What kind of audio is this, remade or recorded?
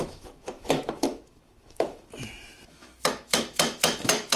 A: remade